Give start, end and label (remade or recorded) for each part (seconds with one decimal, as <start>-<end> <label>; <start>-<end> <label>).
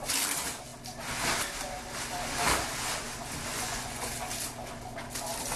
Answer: 0.0-3.5 recorded; 3.5-4.1 remade; 4.1-5.6 recorded